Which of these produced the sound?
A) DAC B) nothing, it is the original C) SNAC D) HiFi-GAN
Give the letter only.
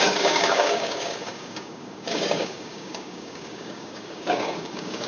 A